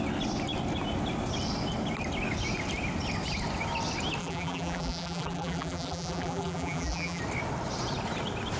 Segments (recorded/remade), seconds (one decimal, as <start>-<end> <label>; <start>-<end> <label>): 0.0-4.2 recorded; 4.2-7.2 remade; 7.2-8.6 recorded